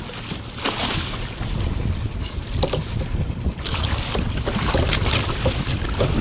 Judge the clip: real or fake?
real